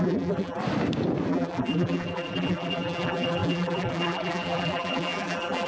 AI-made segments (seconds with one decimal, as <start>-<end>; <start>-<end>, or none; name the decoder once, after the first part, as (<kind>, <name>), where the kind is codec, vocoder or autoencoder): 0.0-0.6 (vocoder, BigVGAN v2); 1.3-5.7